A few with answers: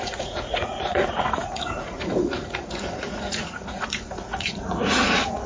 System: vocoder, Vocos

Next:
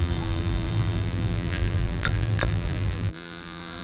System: vocoder, BigVGAN v2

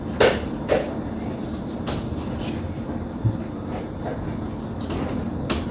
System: none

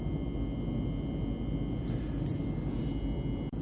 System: none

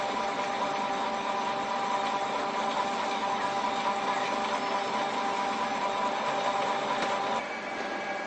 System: none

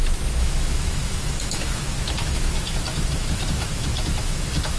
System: autoencoder, DAC-VAE